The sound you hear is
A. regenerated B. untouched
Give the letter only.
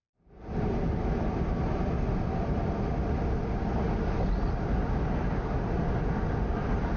B